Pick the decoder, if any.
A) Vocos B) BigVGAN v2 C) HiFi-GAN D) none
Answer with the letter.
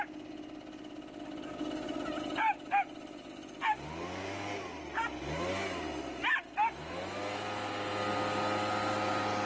D